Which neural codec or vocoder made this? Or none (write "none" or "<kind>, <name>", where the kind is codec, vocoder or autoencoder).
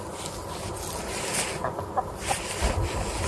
none